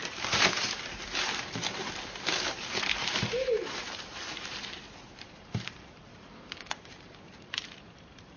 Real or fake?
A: fake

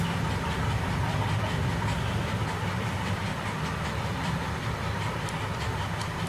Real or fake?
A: fake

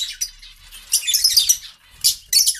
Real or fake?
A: real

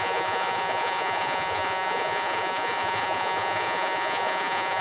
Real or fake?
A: fake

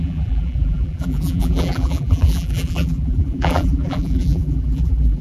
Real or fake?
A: fake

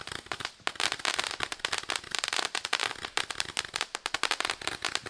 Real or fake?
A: real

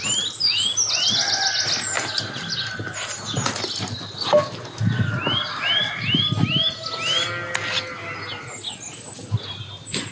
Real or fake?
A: real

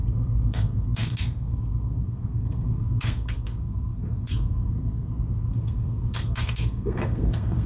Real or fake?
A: fake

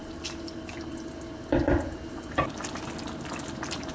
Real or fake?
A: fake